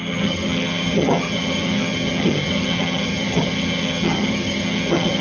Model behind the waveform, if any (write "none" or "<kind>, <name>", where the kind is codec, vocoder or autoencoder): vocoder, HiFi-GAN